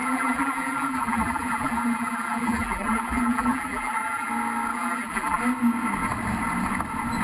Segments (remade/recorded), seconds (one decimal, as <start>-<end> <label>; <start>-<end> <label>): 0.0-4.3 remade; 4.3-4.7 recorded; 4.7-5.4 remade; 5.4-7.2 recorded